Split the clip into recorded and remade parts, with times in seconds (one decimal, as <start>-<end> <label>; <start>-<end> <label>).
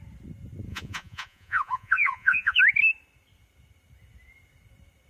0.0-0.7 recorded; 0.7-2.6 remade; 2.6-5.1 recorded